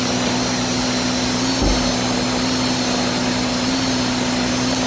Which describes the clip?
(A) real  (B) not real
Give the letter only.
A